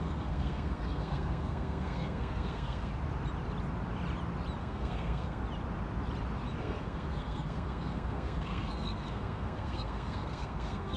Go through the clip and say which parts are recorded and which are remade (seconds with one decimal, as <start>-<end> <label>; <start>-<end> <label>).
0.0-2.9 remade; 2.9-4.6 recorded; 4.6-5.4 remade; 5.4-6.6 recorded; 6.6-11.0 remade